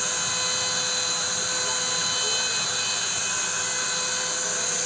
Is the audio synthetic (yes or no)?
no